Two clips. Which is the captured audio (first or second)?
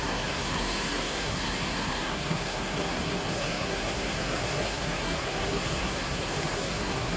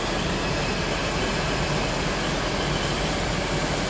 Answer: second